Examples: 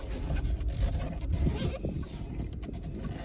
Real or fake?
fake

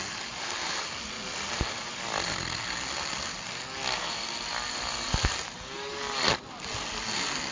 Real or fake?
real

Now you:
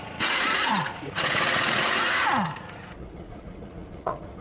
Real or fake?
fake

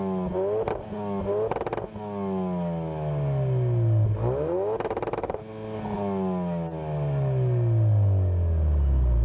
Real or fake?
real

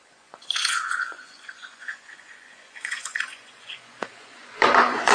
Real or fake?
fake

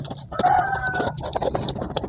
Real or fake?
fake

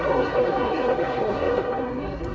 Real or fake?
fake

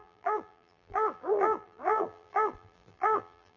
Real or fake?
fake